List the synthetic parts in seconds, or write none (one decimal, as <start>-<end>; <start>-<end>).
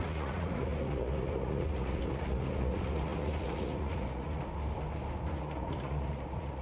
0.0-4.5; 5.3-6.6